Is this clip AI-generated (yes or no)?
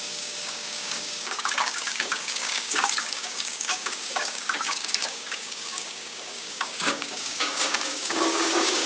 yes